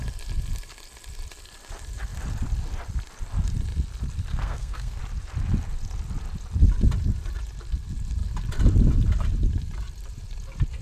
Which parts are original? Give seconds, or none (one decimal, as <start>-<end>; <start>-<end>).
0.0-4.3; 5.0-10.8